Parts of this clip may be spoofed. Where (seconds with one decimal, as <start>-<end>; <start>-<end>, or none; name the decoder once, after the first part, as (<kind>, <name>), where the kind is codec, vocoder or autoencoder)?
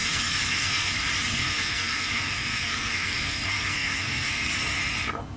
0.0-0.9 (codec, SNAC); 1.3-4.5